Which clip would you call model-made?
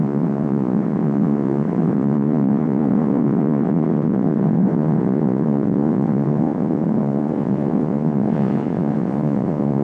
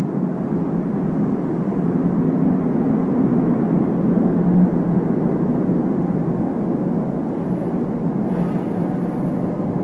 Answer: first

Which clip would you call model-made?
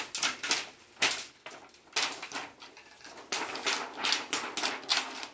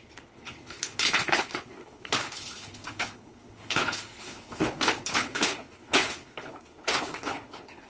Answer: second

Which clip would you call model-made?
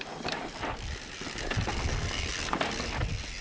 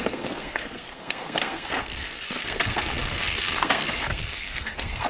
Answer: second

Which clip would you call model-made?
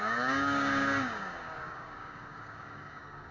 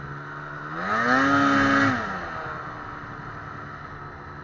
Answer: first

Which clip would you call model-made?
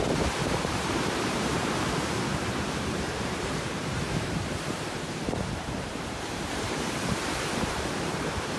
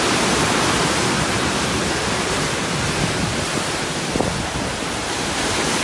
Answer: first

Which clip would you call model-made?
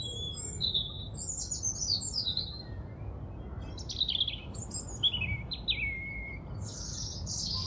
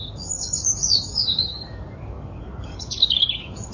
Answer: second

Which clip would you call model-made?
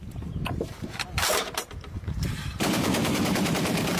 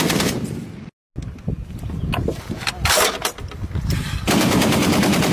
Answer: first